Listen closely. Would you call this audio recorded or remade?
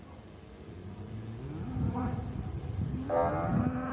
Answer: recorded